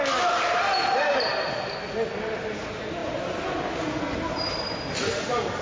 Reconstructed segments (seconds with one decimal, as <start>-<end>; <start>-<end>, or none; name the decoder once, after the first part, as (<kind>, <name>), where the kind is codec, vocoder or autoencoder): none